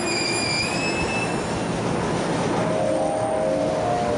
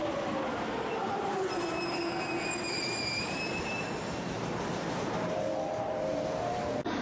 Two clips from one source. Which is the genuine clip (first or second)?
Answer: first